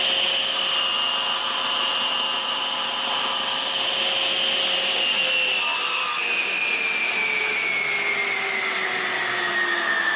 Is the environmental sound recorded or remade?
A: recorded